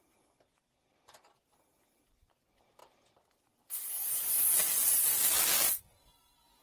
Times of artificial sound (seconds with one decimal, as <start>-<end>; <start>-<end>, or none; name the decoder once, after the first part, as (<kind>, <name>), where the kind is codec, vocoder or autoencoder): none